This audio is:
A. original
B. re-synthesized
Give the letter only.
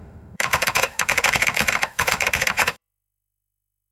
B